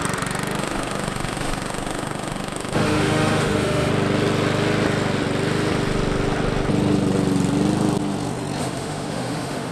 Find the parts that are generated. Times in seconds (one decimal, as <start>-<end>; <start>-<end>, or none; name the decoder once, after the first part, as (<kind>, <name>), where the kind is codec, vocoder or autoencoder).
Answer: 0.6-3.9 (autoencoder, DAC-VAE); 8.6-9.7